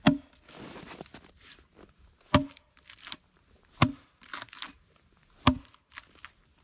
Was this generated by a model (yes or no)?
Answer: no